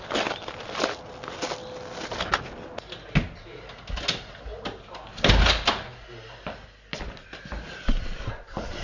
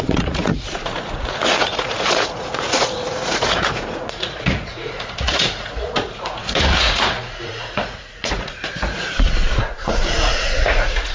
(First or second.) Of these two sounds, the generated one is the second